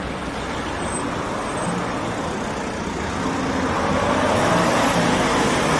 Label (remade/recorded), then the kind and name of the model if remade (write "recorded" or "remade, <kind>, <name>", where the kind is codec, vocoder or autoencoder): recorded